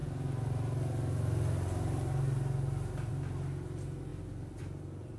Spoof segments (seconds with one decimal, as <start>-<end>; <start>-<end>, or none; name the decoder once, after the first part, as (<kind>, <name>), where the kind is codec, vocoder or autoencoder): none